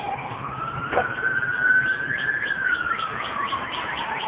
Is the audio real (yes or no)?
yes